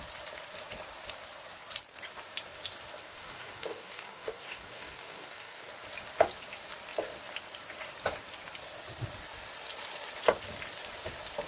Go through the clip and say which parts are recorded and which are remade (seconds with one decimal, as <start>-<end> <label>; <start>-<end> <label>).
0.0-3.1 recorded; 3.1-5.7 remade; 5.7-11.5 recorded